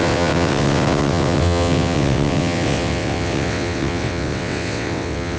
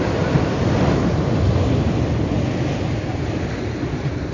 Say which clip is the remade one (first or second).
first